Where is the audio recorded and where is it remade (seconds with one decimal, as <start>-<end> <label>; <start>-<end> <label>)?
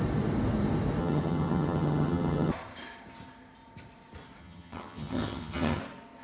0.0-1.0 recorded; 1.0-2.5 remade; 2.5-4.4 recorded; 4.4-5.8 remade; 5.8-6.2 recorded